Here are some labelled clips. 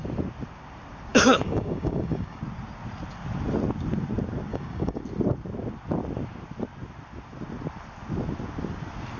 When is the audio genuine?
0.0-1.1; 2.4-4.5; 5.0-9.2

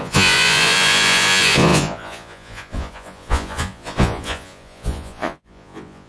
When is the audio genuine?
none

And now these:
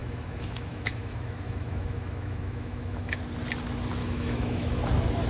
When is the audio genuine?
3.2-4.0; 4.8-5.3

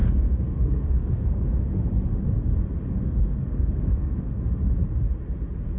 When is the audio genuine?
1.6-3.0; 4.4-5.8

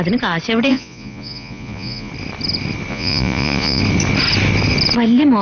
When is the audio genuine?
0.0-0.7; 2.1-2.9; 3.8-5.4